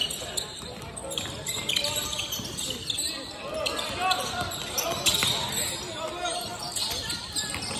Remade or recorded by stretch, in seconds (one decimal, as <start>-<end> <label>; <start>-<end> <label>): 0.0-7.8 recorded